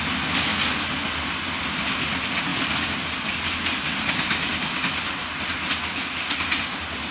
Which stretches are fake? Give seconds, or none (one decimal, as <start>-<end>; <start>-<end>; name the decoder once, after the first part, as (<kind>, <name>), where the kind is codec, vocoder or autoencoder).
none